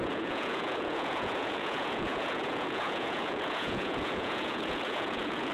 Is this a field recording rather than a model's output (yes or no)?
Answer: no